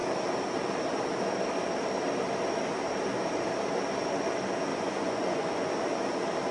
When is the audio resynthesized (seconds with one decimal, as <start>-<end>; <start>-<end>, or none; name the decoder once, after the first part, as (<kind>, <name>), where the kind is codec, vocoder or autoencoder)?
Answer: 4.7-5.7 (vocoder, Vocos)